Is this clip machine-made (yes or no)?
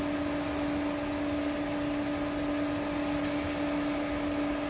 no